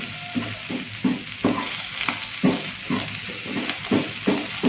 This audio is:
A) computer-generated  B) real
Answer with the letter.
B